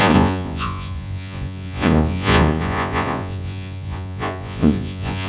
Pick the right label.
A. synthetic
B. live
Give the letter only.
A